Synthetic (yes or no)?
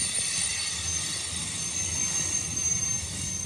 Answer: no